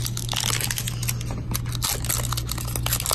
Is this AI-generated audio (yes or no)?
no